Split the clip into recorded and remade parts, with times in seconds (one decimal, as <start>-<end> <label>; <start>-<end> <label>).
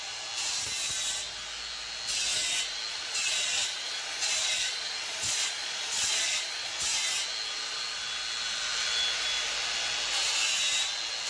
0.0-2.9 recorded; 2.9-6.7 remade; 6.7-11.3 recorded